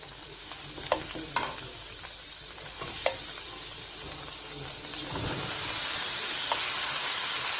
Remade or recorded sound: remade